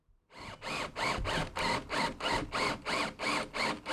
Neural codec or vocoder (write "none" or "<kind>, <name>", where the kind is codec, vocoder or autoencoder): none